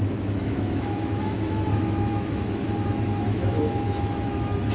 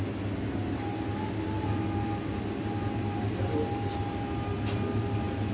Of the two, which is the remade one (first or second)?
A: first